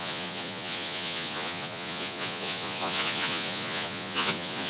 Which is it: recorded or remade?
remade